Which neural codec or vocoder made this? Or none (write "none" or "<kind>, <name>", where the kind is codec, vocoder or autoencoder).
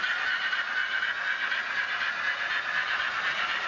none